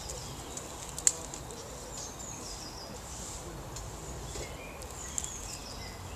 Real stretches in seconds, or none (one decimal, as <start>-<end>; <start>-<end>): 0.0-6.2